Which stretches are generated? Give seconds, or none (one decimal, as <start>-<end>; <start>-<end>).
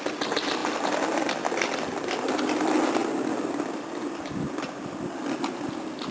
none